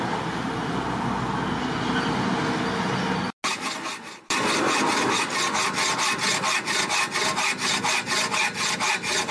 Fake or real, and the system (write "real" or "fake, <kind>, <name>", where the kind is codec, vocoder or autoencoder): real